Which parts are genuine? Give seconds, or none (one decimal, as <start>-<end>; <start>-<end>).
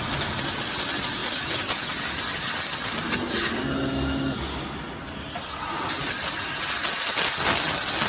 0.0-8.1